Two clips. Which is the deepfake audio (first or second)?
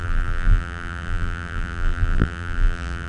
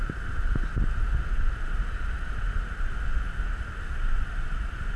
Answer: first